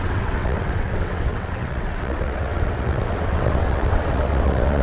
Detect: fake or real fake